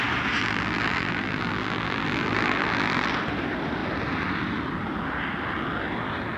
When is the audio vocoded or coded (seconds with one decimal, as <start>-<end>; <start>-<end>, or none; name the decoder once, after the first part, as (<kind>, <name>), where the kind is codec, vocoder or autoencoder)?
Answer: 0.4-3.1 (vocoder, BigVGAN v2)